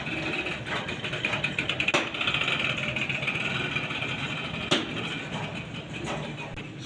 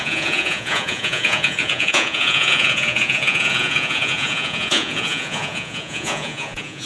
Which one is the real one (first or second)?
first